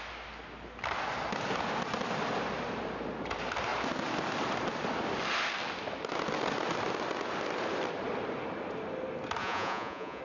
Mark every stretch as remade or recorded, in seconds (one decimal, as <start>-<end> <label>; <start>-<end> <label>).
0.0-9.4 recorded; 9.4-10.2 remade